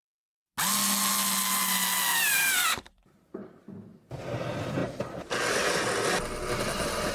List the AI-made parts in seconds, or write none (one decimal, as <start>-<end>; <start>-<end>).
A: 2.1-3.5; 4.8-5.3